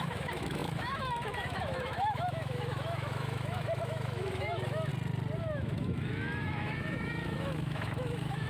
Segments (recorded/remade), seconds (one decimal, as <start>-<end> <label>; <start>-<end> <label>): 0.0-4.9 remade; 4.9-5.4 recorded; 5.4-8.5 remade